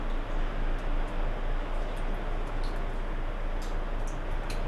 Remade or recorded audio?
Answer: recorded